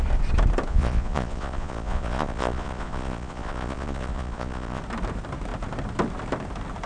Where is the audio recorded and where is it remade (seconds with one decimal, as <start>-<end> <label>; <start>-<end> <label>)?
0.0-0.7 recorded; 0.7-4.8 remade; 4.8-6.9 recorded